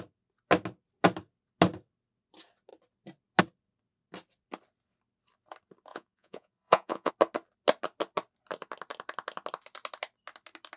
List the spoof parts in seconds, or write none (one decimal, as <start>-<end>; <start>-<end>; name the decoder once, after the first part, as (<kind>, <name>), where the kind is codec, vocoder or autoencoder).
5.9-7.1 (vocoder, Vocos)